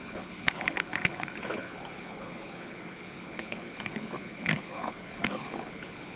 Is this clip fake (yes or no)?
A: yes